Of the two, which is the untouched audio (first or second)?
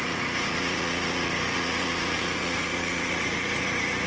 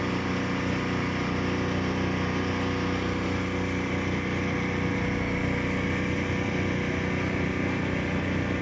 second